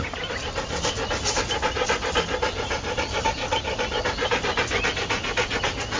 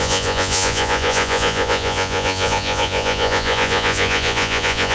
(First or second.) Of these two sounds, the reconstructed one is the second